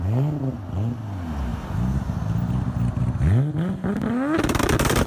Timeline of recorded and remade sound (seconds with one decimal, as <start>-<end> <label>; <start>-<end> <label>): 0.0-5.1 recorded